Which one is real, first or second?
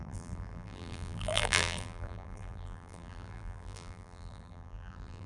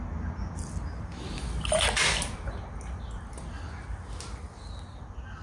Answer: second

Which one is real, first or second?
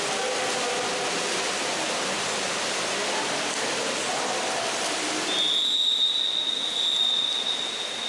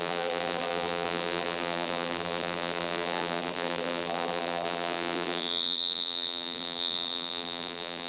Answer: first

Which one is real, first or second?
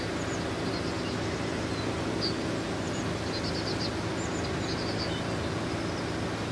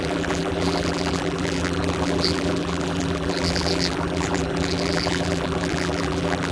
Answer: first